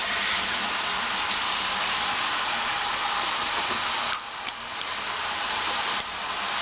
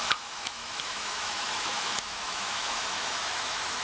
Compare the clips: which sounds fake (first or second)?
second